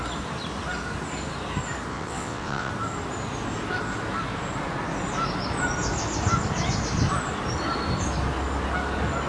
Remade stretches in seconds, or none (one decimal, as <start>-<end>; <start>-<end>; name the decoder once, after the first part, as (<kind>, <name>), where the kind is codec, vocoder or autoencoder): 1.9-2.7 (vocoder, WaveNeXt)